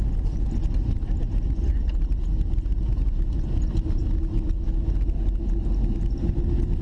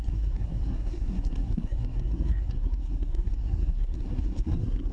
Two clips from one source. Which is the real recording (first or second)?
first